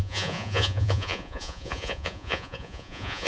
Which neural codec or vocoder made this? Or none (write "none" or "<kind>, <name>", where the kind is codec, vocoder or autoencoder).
vocoder, Vocos